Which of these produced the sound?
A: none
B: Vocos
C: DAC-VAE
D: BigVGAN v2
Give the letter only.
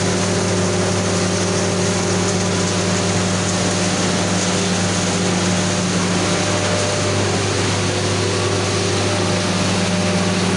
A